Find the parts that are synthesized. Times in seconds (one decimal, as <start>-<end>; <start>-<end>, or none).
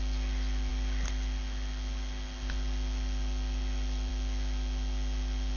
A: none